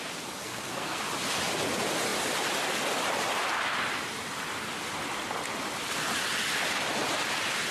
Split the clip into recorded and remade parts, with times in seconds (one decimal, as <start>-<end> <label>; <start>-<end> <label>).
0.0-0.4 recorded; 0.4-1.0 remade; 1.0-7.7 recorded